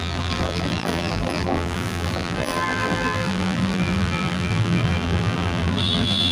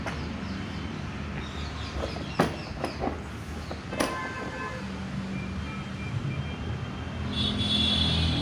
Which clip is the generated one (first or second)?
first